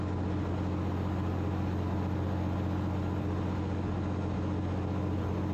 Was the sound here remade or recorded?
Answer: recorded